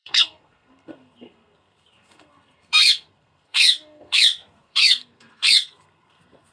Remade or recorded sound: remade